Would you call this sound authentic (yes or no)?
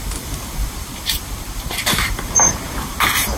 no